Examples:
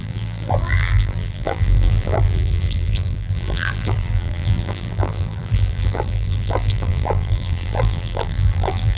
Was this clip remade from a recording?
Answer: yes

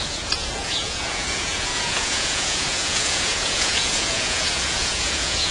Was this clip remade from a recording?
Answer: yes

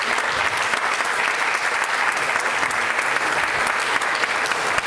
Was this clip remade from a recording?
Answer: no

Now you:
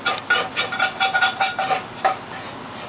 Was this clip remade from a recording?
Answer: no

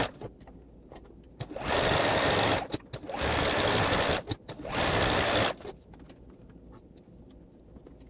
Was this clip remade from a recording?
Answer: no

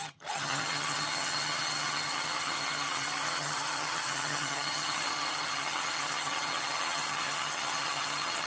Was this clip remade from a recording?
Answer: yes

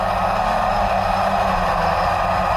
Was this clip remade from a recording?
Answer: no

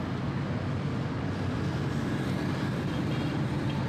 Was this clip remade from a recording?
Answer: no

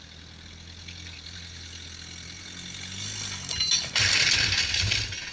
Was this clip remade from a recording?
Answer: no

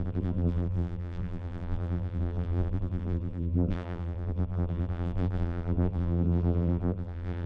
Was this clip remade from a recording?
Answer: yes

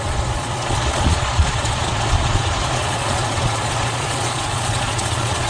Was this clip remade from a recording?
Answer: yes